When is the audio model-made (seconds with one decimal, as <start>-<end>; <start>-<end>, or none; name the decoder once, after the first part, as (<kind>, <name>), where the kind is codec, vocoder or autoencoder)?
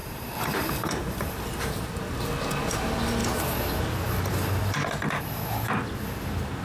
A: 0.0-1.9 (vocoder, BigVGAN v2)